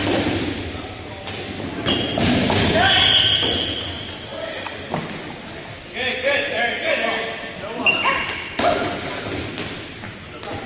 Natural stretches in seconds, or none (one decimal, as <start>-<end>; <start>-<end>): 1.4-10.7